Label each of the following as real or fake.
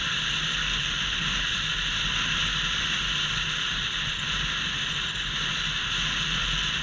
real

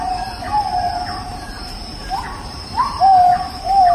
fake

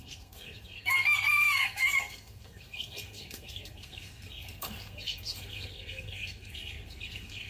fake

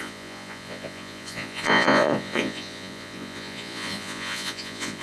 fake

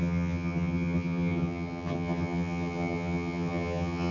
fake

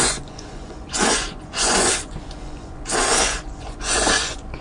fake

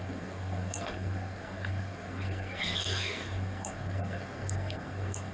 fake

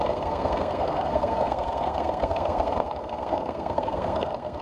fake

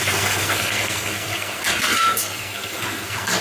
fake